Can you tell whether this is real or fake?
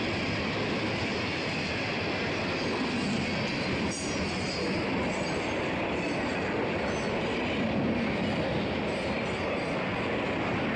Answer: real